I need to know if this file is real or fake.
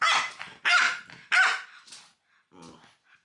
real